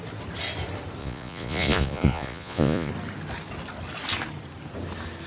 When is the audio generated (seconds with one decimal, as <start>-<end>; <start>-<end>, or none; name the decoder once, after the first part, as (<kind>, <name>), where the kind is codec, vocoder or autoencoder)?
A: 1.0-2.9 (vocoder, Vocos)